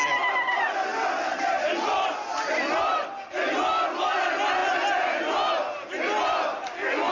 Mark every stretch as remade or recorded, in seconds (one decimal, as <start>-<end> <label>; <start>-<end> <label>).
0.0-7.1 recorded